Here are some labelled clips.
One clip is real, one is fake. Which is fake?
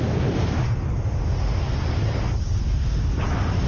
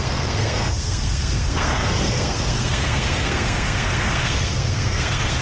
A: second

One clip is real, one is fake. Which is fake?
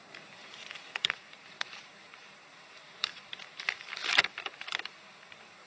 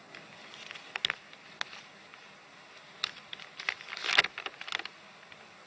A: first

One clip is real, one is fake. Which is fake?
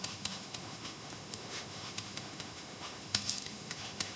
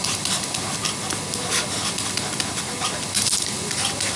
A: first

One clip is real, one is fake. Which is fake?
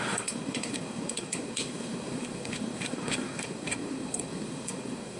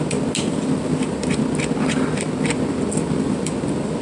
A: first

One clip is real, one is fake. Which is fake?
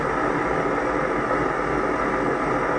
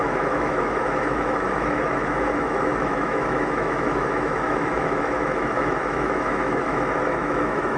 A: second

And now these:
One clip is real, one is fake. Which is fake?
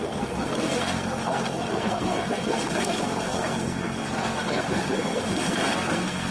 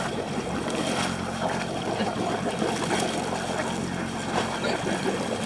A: first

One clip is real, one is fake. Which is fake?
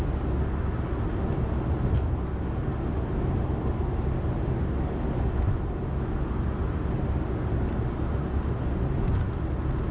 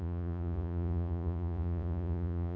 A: second